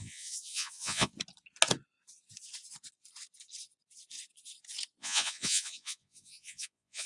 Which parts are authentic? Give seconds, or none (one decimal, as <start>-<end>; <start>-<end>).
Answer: 1.1-5.0